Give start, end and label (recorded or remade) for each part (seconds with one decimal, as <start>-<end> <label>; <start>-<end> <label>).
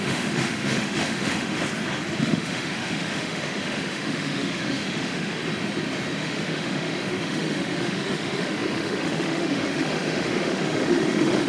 0.0-1.6 remade; 1.6-2.2 recorded; 2.2-5.4 remade; 5.4-6.2 recorded; 6.2-11.5 remade